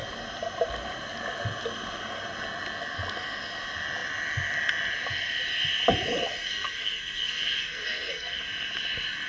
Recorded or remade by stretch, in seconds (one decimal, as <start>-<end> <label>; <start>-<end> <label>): 0.0-6.4 recorded; 6.4-8.4 remade; 8.4-9.3 recorded